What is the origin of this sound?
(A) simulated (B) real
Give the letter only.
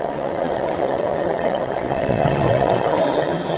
A